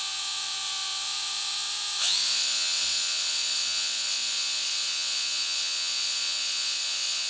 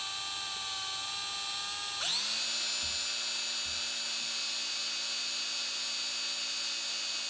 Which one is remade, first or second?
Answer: first